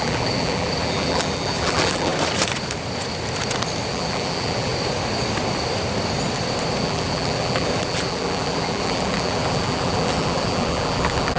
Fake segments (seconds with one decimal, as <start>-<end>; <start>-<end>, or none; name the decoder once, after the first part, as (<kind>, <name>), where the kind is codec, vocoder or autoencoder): 0.0-2.1 (vocoder, BigVGAN v2); 3.9-4.7; 6.8-11.4